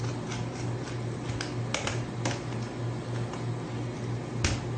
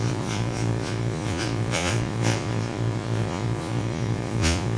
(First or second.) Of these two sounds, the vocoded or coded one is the second